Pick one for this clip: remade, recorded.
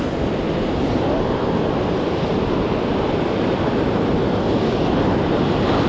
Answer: recorded